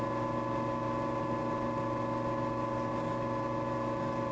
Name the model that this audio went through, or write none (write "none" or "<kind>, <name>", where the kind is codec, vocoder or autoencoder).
none